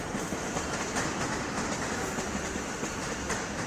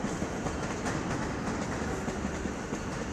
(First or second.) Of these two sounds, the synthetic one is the first